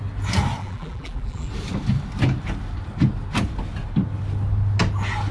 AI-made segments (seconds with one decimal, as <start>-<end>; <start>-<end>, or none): 0.6-1.5